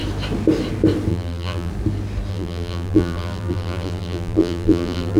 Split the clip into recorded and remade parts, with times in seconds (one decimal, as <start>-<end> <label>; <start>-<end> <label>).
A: 0.0-1.1 recorded; 1.1-1.7 remade; 1.7-2.3 recorded; 2.3-5.2 remade